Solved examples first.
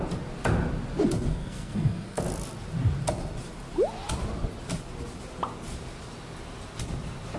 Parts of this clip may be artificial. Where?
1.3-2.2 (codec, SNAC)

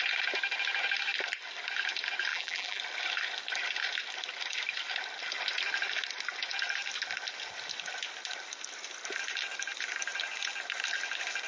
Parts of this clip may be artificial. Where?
2.3-2.8 (vocoder, BigVGAN v2)

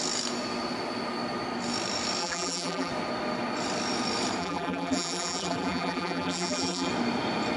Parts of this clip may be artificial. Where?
2.2-2.9 (vocoder, BigVGAN v2); 4.4-6.9

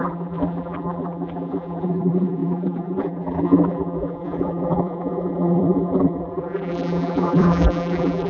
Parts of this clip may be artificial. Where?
0.0-8.3 (vocoder, BigVGAN v2)